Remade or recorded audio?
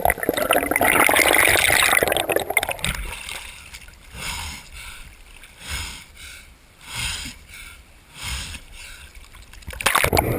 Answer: recorded